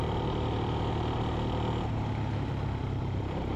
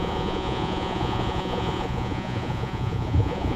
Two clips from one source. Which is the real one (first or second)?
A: first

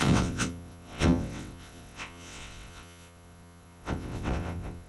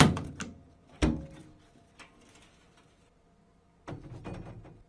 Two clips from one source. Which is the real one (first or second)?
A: second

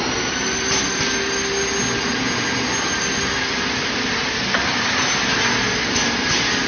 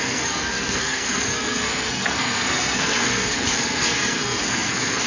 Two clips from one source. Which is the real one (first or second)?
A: first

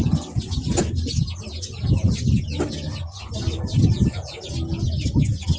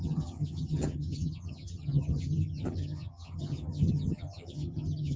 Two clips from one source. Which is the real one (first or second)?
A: first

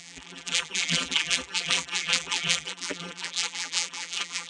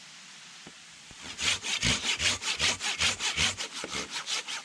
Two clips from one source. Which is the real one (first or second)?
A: second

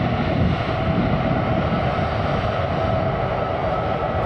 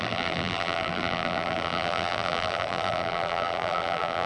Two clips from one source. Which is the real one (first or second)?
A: first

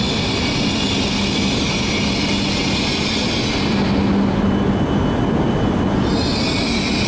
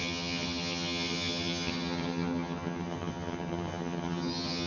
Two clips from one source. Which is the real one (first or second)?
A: first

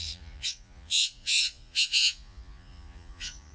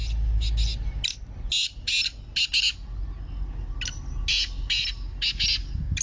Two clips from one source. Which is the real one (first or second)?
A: second